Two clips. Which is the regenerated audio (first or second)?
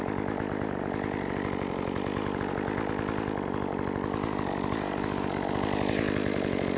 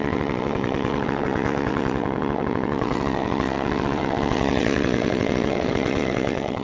second